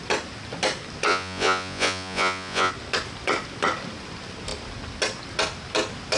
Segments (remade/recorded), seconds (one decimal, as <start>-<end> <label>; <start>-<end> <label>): 0.0-1.1 recorded; 1.1-2.7 remade; 2.7-6.2 recorded